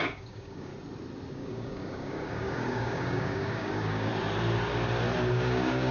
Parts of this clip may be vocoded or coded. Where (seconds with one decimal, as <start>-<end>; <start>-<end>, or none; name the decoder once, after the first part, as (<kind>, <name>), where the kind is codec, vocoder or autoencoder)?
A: 0.0-0.7 (codec, DAC); 1.3-4.1; 5.3-5.9